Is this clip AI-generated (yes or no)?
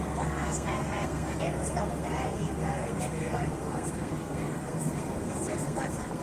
yes